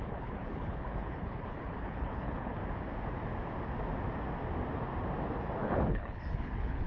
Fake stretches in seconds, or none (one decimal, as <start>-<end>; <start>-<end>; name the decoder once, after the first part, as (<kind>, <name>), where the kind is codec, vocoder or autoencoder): 0.0-2.6 (codec, HILCodec); 5.7-6.9